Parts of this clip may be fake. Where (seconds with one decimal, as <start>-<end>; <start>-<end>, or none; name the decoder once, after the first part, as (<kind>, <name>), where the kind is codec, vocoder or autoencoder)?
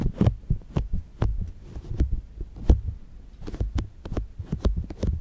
none